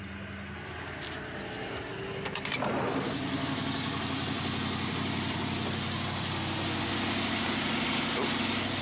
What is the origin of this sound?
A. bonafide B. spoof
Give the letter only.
A